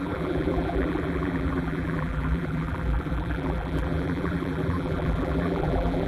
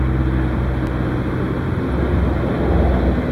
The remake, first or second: first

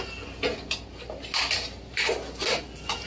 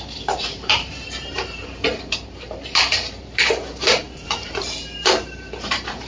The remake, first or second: second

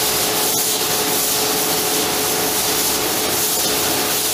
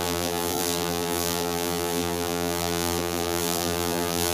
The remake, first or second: second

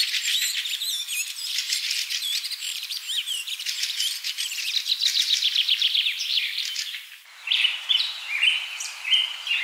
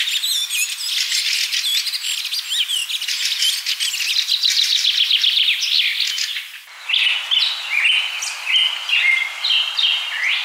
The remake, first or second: first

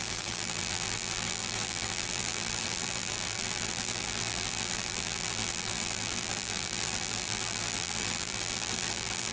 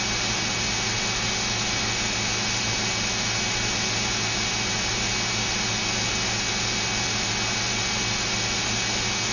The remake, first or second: first